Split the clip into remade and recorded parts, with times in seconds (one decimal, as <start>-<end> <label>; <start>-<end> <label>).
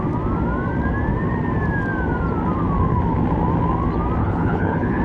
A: 0.0-4.2 recorded; 4.2-5.0 remade